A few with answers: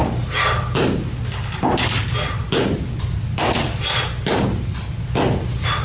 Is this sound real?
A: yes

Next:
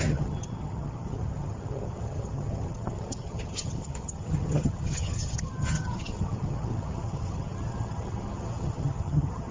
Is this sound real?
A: no